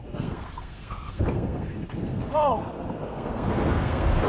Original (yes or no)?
no